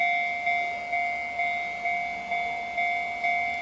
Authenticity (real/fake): real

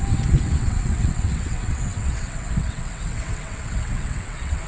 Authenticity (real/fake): fake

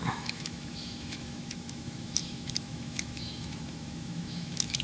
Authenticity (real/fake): fake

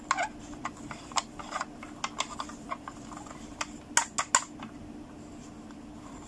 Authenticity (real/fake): real